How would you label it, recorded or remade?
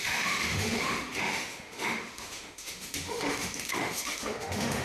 remade